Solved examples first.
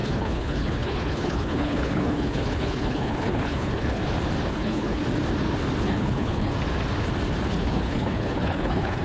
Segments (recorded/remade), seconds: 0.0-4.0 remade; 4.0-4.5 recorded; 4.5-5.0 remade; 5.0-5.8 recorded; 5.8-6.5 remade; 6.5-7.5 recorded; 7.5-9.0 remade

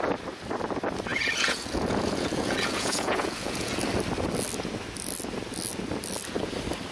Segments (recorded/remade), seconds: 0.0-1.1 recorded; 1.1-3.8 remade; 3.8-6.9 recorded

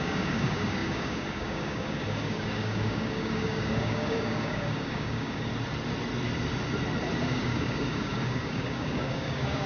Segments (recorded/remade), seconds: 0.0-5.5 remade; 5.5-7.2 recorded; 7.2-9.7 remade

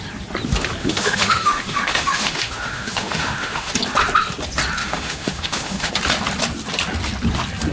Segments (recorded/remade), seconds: 0.0-0.8 recorded; 0.8-3.7 remade; 3.7-4.8 recorded; 4.8-5.9 remade; 5.9-7.7 recorded

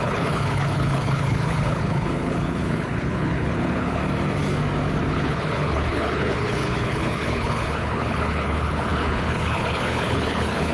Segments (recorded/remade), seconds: 0.0-4.0 remade; 4.0-5.1 recorded; 5.1-10.7 remade

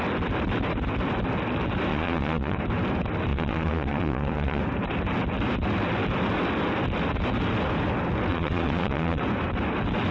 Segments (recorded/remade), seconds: 0.0-1.9 recorded; 1.9-2.6 remade; 2.6-3.3 recorded; 3.3-4.6 remade; 4.6-8.3 recorded; 8.3-9.2 remade; 9.2-10.1 recorded